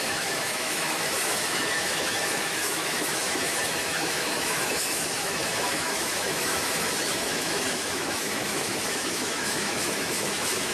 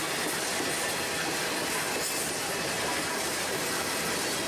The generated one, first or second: first